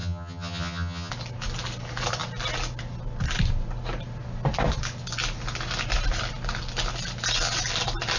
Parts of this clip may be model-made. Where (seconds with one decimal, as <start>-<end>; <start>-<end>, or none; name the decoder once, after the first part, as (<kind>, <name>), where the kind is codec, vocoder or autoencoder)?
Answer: 0.0-1.1 (vocoder, HiFi-GAN)